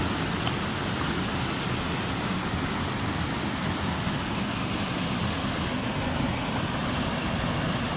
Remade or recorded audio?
recorded